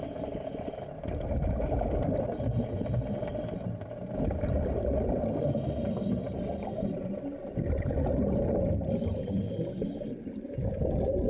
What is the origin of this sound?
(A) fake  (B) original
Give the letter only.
B